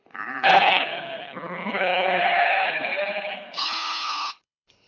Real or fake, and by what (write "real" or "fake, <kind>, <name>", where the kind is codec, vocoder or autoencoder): fake, codec, HILCodec